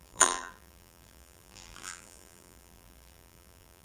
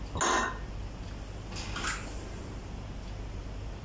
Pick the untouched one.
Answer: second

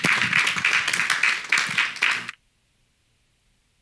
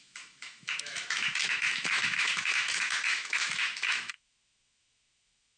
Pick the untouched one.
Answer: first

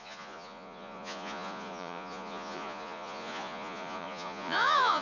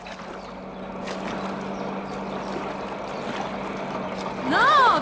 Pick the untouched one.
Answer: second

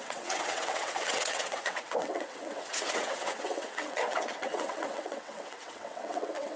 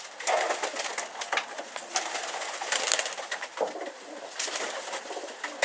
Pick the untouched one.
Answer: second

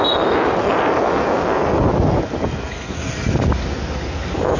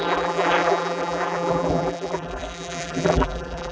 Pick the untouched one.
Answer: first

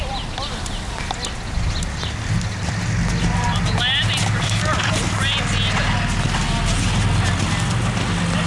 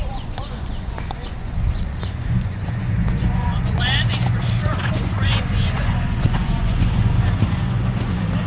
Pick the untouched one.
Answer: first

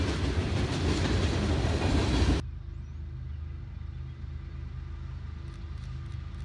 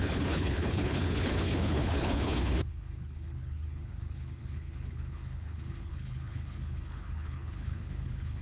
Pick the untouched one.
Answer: first